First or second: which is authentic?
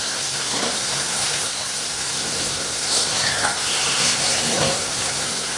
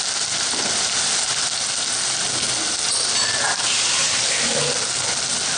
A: second